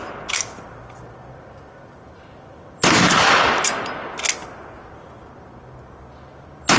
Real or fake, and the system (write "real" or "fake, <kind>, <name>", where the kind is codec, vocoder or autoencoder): real